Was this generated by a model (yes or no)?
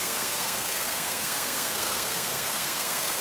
yes